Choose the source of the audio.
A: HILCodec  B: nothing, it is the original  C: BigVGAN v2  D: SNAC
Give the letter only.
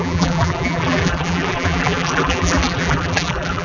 C